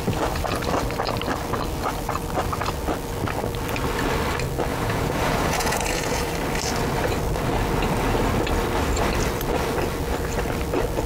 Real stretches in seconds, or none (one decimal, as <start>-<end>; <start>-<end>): 0.0-4.7; 6.3-11.1